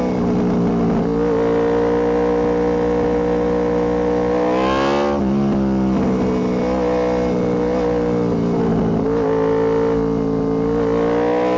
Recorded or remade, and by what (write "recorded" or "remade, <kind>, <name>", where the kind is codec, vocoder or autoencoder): recorded